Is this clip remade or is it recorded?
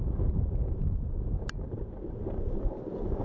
recorded